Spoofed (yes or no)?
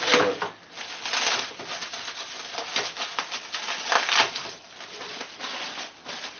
no